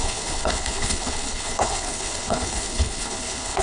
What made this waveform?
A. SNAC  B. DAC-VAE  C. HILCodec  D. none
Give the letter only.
C